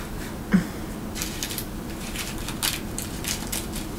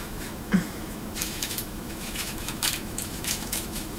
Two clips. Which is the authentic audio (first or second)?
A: first